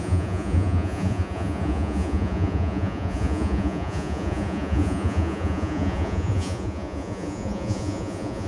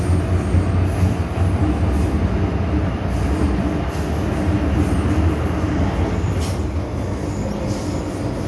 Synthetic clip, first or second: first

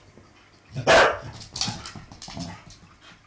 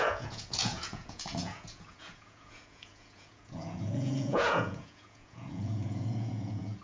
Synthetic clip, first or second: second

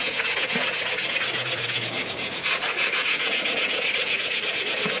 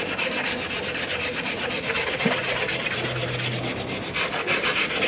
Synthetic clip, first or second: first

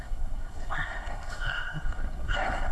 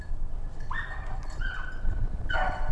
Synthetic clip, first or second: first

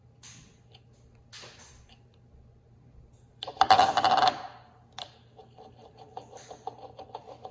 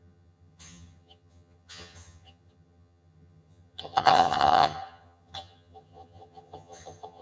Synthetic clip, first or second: second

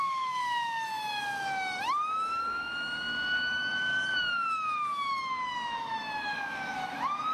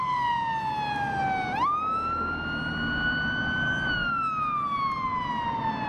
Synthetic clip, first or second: first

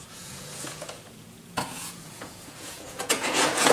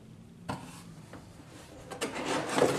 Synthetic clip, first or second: first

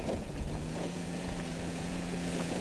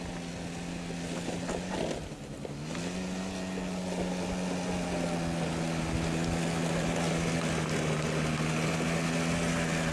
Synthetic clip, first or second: first